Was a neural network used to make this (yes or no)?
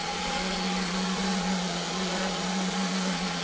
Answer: yes